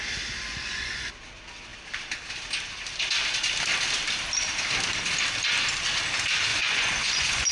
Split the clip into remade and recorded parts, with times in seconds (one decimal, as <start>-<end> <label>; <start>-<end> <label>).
0.0-0.5 recorded; 0.5-1.1 remade; 1.1-6.5 recorded; 6.5-7.5 remade